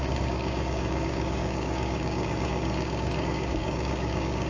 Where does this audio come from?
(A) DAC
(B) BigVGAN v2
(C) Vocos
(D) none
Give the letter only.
A